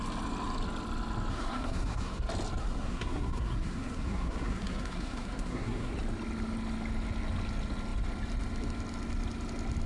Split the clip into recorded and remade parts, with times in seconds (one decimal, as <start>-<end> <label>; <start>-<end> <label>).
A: 0.0-1.3 recorded; 1.3-2.2 remade; 2.2-2.6 recorded; 2.6-5.9 remade; 5.9-9.9 recorded